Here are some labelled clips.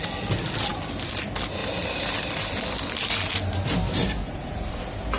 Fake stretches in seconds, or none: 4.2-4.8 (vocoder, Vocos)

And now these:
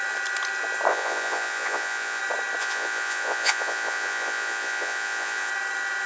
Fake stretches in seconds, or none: 0.9-2.2 (vocoder, Vocos); 2.6-5.5

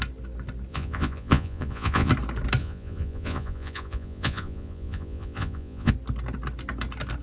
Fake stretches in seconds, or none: 0.7-2.1 (vocoder, Vocos); 2.6-5.9